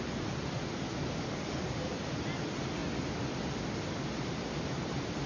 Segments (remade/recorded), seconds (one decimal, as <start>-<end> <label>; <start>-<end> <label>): 0.0-5.3 recorded